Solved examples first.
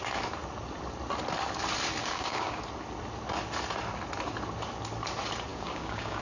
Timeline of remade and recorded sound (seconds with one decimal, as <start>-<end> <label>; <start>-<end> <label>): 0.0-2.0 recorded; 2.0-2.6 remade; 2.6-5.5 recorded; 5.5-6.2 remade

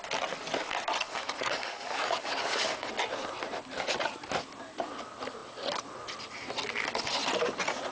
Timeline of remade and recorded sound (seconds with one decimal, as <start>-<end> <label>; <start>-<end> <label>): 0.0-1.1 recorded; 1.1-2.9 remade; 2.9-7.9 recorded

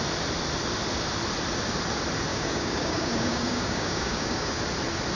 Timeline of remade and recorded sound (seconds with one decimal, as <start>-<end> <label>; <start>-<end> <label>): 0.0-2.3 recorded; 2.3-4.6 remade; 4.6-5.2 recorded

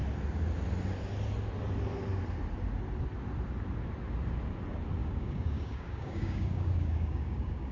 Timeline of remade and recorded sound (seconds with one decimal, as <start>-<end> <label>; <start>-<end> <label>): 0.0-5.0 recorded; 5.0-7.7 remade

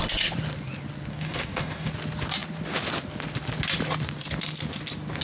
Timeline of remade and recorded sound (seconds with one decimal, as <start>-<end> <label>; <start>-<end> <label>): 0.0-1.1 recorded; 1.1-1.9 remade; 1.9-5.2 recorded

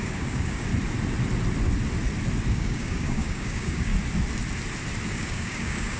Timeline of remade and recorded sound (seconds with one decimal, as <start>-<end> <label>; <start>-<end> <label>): 0.0-0.7 remade; 0.7-2.5 recorded; 2.5-3.9 remade; 3.9-5.1 recorded; 5.1-6.0 remade

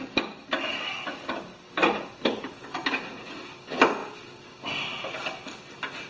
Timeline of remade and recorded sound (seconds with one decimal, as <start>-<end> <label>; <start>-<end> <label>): 0.0-0.7 recorded; 0.7-2.5 remade; 2.5-6.1 recorded